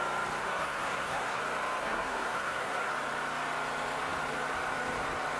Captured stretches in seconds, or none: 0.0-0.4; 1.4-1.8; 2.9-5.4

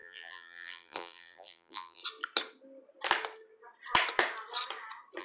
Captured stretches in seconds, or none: 2.0-5.2